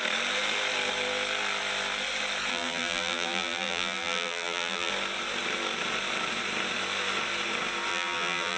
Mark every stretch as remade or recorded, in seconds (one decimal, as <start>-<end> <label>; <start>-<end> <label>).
0.0-2.5 recorded; 2.5-4.9 remade; 4.9-7.9 recorded; 7.9-8.6 remade